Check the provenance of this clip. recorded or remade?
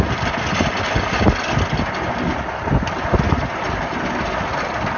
recorded